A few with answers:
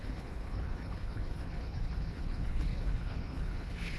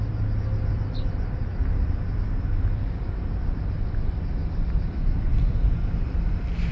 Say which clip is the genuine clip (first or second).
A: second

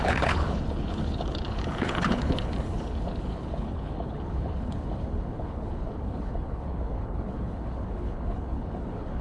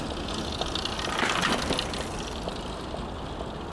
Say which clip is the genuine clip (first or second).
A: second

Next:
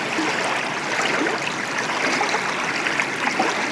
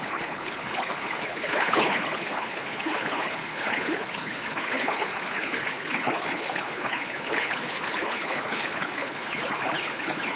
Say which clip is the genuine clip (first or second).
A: first